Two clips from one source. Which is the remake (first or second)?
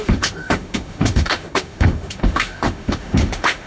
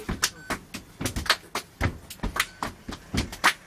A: first